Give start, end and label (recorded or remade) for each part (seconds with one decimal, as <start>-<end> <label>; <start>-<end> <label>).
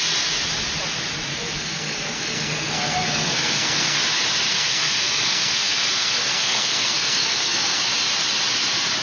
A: 0.0-1.3 recorded; 1.3-4.0 remade; 4.0-4.5 recorded; 4.5-7.8 remade; 7.8-9.0 recorded